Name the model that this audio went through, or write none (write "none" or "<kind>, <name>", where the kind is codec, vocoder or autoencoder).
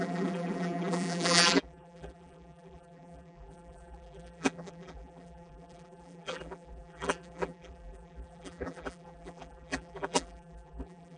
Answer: vocoder, BigVGAN v2